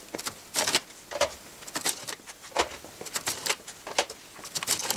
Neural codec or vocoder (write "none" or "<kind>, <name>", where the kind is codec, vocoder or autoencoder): none